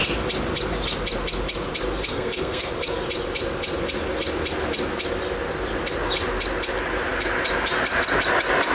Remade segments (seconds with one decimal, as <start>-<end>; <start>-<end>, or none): 2.1-2.7